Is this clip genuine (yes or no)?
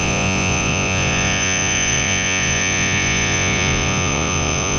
no